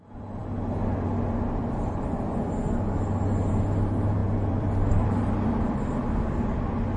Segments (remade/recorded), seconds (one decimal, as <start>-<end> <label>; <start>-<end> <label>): 0.0-4.2 recorded; 4.2-5.2 remade; 5.2-7.0 recorded